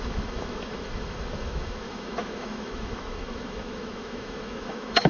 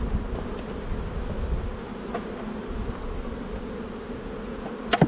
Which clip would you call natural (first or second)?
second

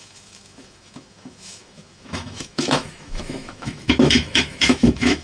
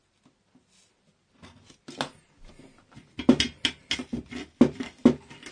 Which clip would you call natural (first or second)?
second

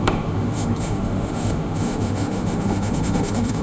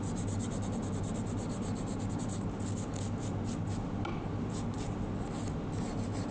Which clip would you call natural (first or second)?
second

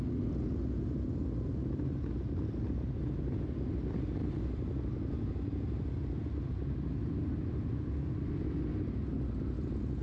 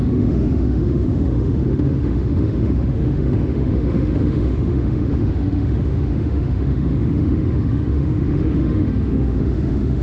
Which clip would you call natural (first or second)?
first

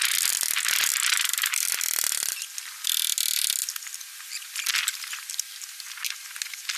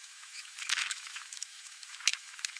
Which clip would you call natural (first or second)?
first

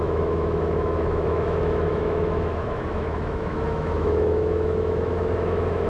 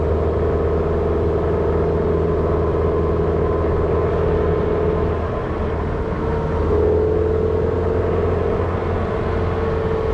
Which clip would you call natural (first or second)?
second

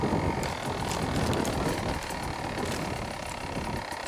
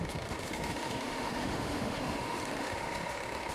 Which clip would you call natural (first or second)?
first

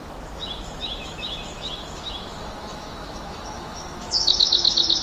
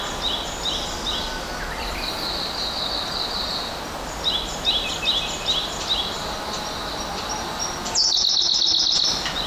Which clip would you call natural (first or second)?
second